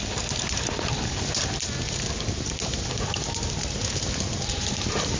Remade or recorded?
recorded